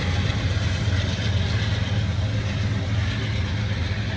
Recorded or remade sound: recorded